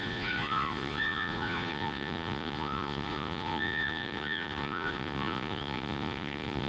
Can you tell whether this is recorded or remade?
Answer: remade